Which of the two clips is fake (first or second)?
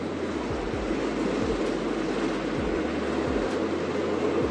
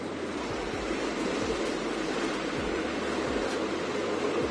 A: second